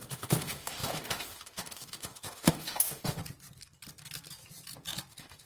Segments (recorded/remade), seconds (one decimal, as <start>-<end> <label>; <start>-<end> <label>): 0.0-3.2 remade; 3.2-5.1 recorded; 5.1-5.5 remade